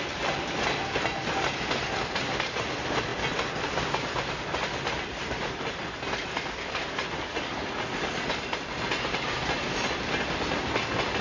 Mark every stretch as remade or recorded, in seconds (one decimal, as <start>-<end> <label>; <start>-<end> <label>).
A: 0.0-11.2 recorded